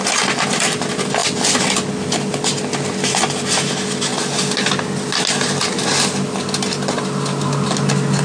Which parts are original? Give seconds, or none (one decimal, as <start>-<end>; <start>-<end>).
0.0-8.2